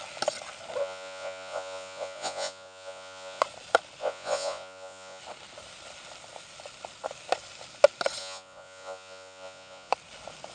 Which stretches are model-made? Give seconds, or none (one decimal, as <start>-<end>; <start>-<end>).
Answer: 0.8-3.4; 4.0-5.2; 8.2-9.9